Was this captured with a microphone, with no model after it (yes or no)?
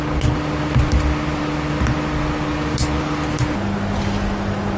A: yes